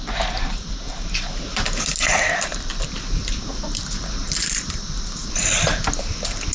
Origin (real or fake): real